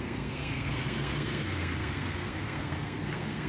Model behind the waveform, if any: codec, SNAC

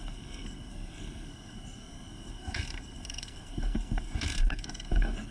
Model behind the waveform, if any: codec, SNAC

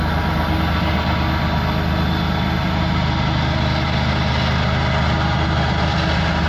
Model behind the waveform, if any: none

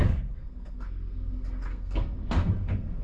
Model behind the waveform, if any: codec, SNAC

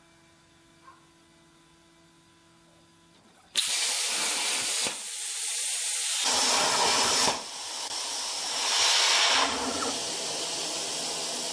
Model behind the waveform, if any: none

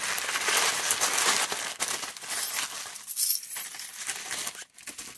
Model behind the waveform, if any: none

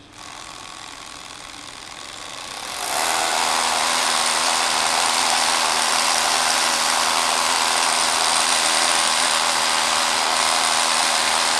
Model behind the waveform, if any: none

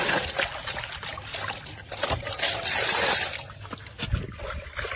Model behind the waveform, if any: none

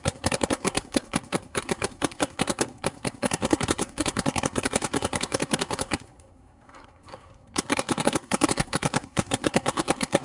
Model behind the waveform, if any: codec, SNAC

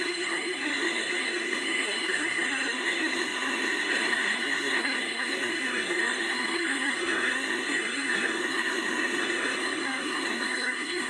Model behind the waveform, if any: codec, SNAC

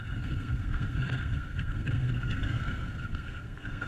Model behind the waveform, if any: codec, SNAC